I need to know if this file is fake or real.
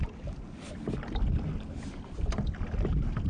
real